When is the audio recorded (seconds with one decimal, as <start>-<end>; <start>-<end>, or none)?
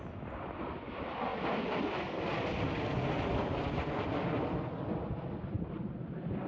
0.0-6.5